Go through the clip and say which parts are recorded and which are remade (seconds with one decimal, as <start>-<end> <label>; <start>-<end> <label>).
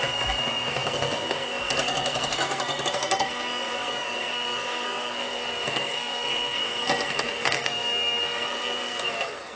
0.0-9.6 remade